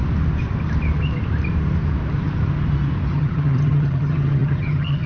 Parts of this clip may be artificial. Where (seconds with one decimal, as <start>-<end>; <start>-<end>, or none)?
3.1-5.1